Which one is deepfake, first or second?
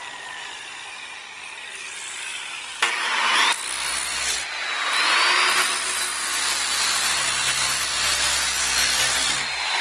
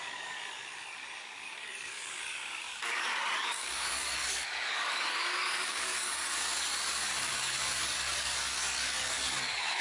second